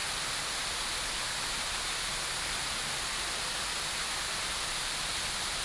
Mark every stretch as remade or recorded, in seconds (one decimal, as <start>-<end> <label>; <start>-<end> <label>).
0.0-5.6 recorded